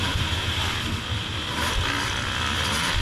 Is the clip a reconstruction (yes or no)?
no